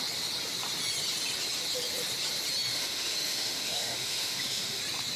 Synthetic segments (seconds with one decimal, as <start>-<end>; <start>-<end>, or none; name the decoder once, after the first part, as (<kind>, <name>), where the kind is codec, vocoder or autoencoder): 2.7-4.8 (autoencoder, DAC-VAE)